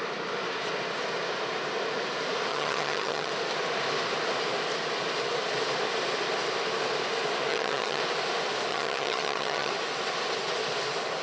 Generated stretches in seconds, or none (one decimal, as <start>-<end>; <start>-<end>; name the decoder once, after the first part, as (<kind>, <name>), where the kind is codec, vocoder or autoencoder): 2.5-3.3 (vocoder, HiFi-GAN); 7.5-8.0; 8.7-9.7